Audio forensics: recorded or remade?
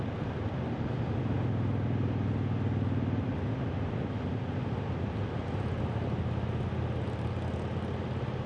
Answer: recorded